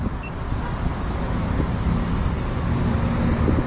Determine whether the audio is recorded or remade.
recorded